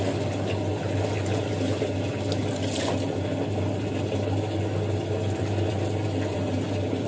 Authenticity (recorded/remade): recorded